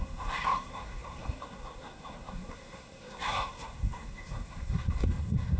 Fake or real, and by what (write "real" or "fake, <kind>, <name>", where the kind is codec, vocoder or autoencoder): fake, codec, SNAC